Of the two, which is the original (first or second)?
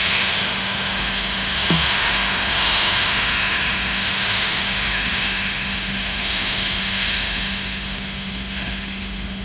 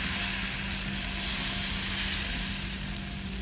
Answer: second